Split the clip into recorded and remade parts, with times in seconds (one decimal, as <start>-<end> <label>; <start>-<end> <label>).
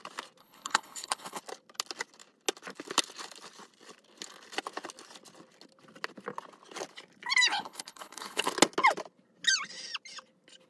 0.0-0.4 recorded; 0.4-1.4 remade; 1.4-7.5 recorded; 7.5-8.5 remade; 8.5-10.7 recorded